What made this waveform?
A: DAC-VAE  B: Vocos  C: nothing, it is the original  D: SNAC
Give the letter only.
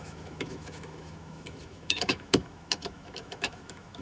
A